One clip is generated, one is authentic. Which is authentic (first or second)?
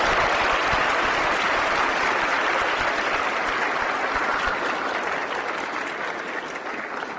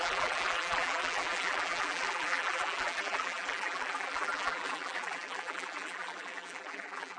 first